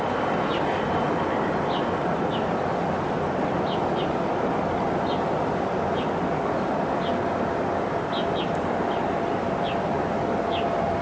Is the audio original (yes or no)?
yes